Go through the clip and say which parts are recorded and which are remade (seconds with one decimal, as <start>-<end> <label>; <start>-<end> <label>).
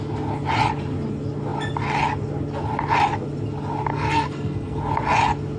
0.0-3.9 recorded; 3.9-4.8 remade; 4.8-5.6 recorded